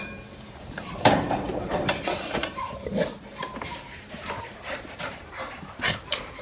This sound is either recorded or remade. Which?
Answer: remade